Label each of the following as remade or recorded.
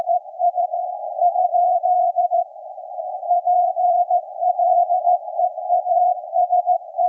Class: remade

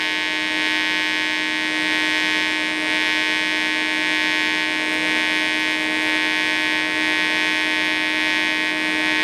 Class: recorded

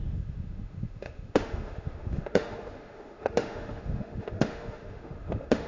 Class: remade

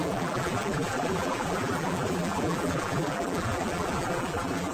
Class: remade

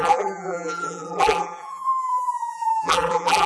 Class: remade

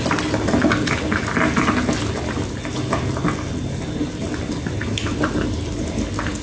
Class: recorded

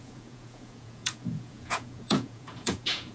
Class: remade